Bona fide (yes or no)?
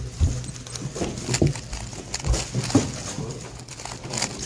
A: yes